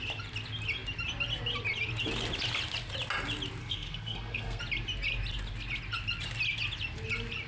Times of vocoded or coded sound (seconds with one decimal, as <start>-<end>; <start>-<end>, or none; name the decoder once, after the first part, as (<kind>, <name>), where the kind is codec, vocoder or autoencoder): 3.6-4.6 (codec, SNAC)